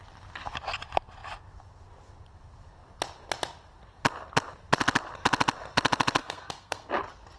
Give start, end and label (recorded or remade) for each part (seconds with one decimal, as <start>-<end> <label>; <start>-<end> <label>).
0.0-6.2 recorded; 6.2-6.9 remade; 6.9-7.4 recorded